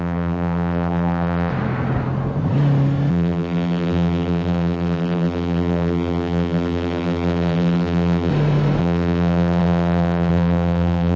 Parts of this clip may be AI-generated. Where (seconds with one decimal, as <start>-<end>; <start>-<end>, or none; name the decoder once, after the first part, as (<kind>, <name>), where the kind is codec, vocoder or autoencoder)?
0.0-1.5 (vocoder, BigVGAN v2); 3.1-8.3; 8.8-11.2